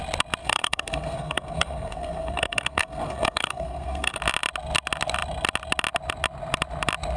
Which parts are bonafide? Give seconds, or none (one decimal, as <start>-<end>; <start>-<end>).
0.0-0.4; 4.2-7.2